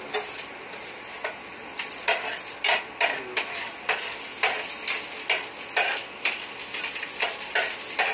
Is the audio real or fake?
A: real